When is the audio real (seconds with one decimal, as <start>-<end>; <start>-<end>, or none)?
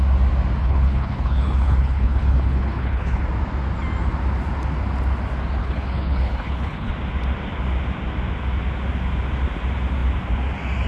0.0-0.6; 3.2-5.6; 6.9-10.9